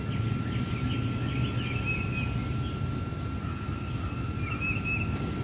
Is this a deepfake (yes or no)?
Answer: no